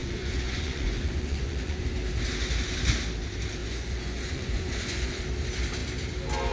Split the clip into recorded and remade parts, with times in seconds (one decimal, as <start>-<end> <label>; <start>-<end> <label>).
0.0-1.9 remade; 1.9-3.6 recorded; 3.6-5.2 remade; 5.2-6.5 recorded